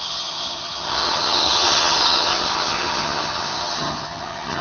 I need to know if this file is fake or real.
fake